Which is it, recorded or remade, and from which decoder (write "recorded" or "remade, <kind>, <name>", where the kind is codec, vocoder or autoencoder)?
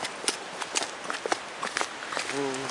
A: recorded